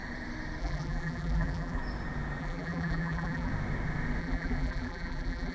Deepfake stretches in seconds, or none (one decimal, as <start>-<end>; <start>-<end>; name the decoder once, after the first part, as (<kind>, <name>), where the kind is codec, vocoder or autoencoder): 0.6-1.8 (vocoder, BigVGAN v2); 2.4-3.5; 4.2-5.5